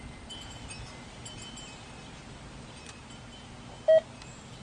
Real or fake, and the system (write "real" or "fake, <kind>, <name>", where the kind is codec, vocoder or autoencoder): real